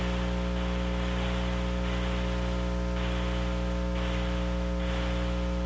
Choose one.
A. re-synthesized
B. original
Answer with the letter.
B